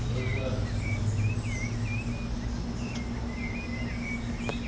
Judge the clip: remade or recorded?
recorded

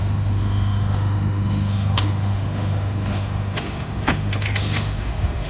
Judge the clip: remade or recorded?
remade